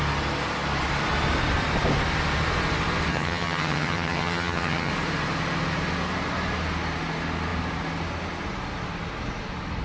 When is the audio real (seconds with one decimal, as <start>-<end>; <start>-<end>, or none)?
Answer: 0.0-3.1; 4.9-9.8